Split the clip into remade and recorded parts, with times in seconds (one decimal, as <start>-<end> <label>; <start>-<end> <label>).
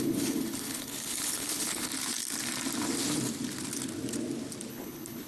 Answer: 0.0-1.9 remade; 1.9-4.7 recorded; 4.7-5.3 remade